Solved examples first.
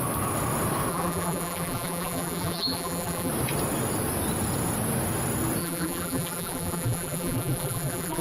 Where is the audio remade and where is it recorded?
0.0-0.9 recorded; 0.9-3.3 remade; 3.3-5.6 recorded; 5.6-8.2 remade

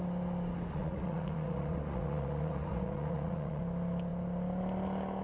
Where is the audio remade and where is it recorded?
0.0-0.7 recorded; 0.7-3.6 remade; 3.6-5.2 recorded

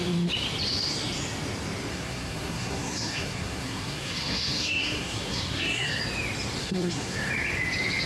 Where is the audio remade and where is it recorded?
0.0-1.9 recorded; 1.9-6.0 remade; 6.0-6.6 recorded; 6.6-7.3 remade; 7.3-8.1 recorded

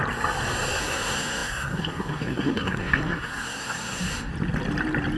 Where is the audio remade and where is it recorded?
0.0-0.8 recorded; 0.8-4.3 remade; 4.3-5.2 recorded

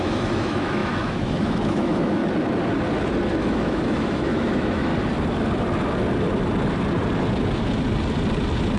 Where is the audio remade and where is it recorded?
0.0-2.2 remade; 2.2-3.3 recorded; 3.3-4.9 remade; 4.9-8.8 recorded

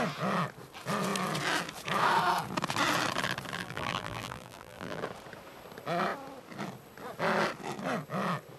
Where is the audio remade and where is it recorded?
0.0-3.6 recorded; 3.6-5.0 remade; 5.0-8.6 recorded